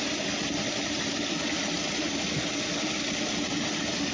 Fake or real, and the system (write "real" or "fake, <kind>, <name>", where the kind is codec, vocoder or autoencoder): real